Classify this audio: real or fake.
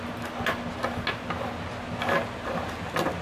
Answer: real